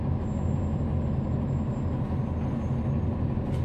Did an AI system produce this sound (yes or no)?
no